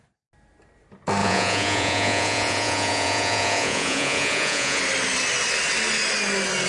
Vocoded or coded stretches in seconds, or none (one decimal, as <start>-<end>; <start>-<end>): 1.2-4.8